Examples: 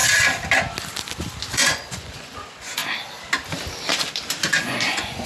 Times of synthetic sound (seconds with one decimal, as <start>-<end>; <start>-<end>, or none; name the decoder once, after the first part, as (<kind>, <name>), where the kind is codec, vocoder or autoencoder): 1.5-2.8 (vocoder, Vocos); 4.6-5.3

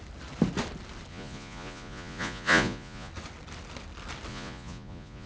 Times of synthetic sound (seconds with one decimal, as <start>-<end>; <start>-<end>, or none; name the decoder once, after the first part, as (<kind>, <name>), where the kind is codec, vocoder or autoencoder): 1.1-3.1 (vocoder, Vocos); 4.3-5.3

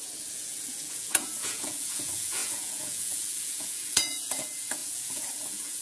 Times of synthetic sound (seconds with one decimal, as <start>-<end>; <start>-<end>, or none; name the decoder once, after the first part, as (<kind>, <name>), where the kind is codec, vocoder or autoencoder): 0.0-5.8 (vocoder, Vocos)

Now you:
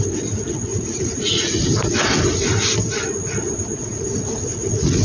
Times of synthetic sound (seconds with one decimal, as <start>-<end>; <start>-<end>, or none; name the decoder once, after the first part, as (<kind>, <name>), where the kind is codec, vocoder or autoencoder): 0.7-1.6 (vocoder, Vocos); 3.8-5.0

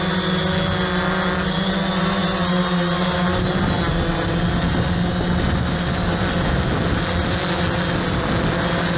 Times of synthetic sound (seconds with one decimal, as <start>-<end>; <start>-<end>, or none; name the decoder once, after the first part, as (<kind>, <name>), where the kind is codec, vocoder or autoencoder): none